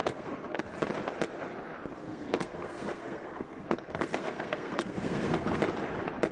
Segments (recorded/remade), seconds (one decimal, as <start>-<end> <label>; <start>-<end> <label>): 0.0-0.6 remade; 0.6-2.0 recorded; 2.0-5.6 remade; 5.6-6.3 recorded